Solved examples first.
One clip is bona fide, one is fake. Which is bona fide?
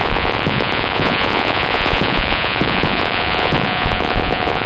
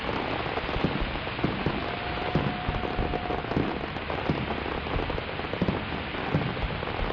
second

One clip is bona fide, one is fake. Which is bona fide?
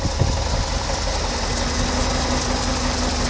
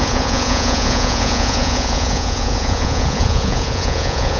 first